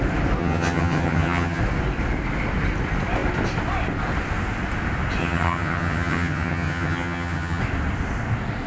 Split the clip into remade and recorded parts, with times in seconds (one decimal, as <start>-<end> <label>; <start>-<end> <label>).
0.0-0.4 recorded; 0.4-1.6 remade; 1.6-5.2 recorded; 5.2-7.6 remade; 7.6-8.7 recorded